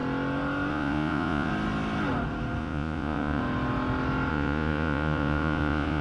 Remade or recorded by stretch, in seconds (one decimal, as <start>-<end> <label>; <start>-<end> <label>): 0.0-0.7 recorded; 0.7-1.5 remade; 1.5-2.6 recorded; 2.6-3.4 remade; 3.4-4.3 recorded; 4.3-6.0 remade